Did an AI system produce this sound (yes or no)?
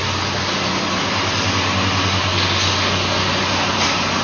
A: no